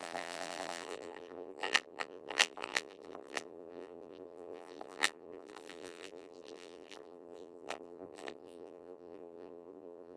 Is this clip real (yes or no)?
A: no